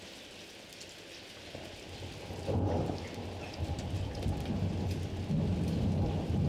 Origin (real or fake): real